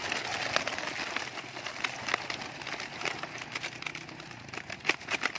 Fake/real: real